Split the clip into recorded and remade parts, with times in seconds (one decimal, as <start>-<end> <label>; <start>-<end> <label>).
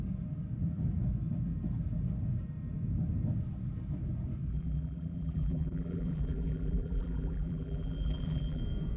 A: 0.0-4.5 recorded; 4.5-8.6 remade; 8.6-9.0 recorded